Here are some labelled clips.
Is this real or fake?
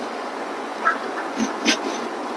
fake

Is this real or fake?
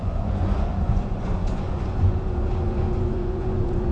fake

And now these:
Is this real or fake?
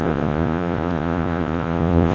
fake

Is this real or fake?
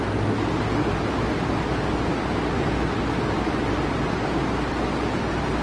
real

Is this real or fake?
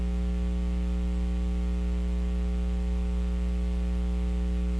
real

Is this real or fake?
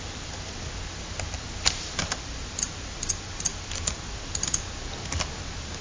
real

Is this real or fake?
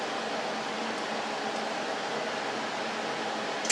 real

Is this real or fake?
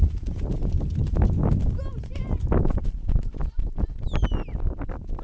real